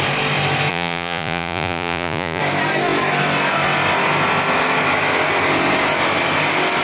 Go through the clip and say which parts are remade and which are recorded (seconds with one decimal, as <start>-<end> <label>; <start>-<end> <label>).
0.0-0.7 recorded; 0.7-2.4 remade; 2.4-6.8 recorded